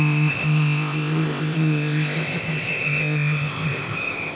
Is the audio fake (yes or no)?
yes